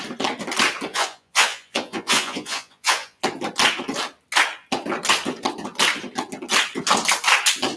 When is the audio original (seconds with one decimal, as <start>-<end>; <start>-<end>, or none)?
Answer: 0.0-0.9; 3.2-7.8